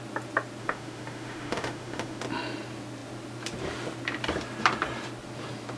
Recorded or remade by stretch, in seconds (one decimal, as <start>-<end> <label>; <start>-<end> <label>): 0.0-0.6 recorded; 0.6-2.2 remade; 2.2-5.8 recorded